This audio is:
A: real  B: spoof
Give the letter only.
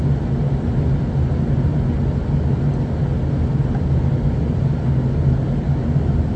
A